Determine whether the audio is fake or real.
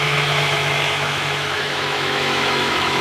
fake